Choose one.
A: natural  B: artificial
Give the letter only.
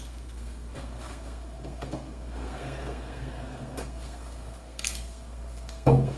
B